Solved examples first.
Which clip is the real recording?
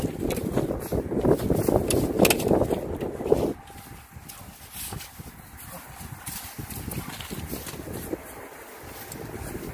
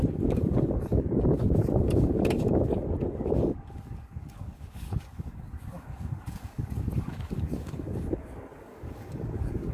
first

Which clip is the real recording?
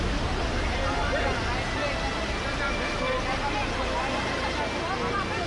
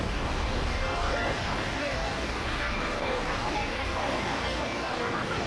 first